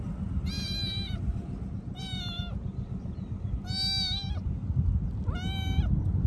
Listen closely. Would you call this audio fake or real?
real